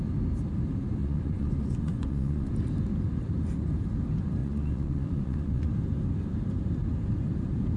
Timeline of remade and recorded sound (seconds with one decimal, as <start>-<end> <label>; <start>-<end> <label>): 0.0-1.0 recorded; 1.0-2.5 remade; 2.5-4.4 recorded; 4.4-5.7 remade; 5.7-7.8 recorded